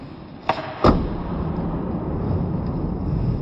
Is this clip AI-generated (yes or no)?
no